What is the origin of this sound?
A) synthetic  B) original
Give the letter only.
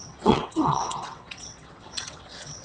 A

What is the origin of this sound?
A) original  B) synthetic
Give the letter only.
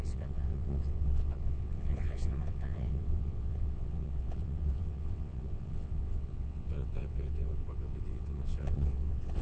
B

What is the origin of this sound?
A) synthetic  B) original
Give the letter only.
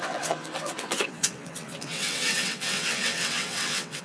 A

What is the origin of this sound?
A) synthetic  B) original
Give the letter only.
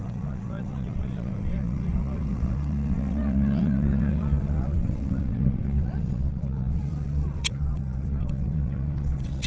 A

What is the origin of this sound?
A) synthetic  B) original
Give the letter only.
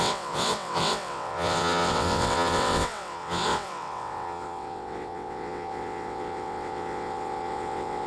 A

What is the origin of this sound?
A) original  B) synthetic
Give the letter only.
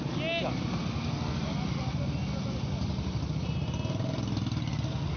A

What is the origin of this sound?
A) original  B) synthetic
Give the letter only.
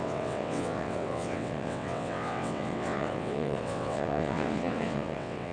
B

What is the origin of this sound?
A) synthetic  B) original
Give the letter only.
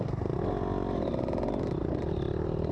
B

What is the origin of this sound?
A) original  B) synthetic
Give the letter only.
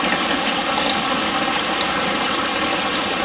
A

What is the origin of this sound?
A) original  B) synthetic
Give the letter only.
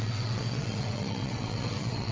B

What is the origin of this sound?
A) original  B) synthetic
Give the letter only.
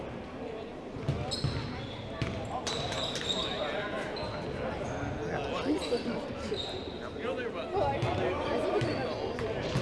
A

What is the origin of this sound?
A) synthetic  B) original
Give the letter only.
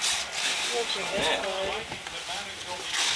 B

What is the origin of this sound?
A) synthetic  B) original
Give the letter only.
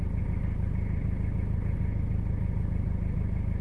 B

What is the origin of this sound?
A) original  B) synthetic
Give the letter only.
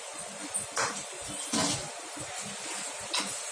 A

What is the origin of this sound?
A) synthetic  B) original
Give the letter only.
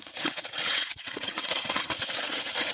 A